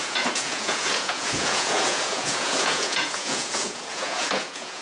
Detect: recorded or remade remade